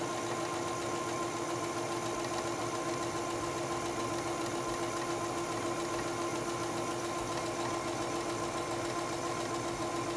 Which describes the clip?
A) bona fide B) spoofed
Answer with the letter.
A